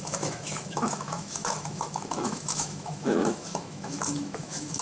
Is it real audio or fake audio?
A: fake